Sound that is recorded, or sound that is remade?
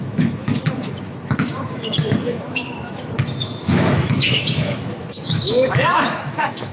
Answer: remade